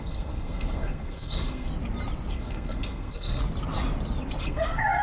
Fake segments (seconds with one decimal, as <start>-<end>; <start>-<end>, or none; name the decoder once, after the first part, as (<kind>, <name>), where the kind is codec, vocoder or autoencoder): 0.0-1.7 (codec, SNAC); 2.3-3.4; 4.4-5.0